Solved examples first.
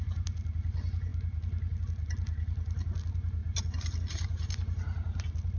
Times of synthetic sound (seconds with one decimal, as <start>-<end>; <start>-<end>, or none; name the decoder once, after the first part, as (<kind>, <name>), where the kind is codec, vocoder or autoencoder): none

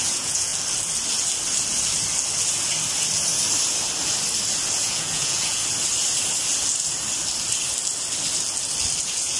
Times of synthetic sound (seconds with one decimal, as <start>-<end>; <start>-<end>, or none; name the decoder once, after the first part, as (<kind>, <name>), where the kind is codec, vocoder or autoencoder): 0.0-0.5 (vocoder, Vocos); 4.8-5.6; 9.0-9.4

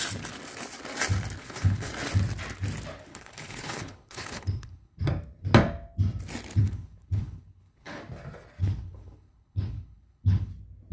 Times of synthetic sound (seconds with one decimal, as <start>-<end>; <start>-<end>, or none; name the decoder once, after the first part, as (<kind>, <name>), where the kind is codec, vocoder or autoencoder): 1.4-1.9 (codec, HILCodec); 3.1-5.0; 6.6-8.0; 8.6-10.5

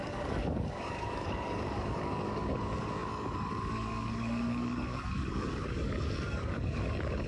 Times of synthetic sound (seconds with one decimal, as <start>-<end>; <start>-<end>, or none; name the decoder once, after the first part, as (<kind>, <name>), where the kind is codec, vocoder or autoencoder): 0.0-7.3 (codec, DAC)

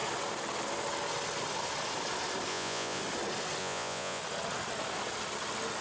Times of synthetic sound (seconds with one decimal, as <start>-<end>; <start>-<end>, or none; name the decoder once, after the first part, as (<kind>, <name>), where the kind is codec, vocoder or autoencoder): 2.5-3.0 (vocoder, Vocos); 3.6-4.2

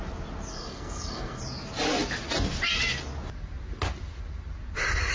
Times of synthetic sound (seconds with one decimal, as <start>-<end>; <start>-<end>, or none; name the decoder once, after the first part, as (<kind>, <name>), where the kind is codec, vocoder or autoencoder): 0.5-1.4 (codec, SNAC)

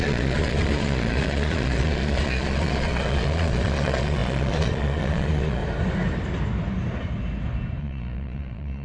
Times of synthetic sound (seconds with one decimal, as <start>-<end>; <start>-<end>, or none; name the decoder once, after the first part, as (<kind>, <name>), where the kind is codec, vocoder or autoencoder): 0.0-5.6 (vocoder, Vocos); 7.8-8.8

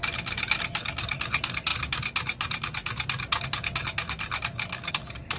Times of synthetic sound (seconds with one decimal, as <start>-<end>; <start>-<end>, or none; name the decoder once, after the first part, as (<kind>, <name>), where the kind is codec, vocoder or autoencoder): none